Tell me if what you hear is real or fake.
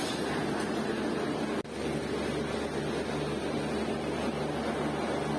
real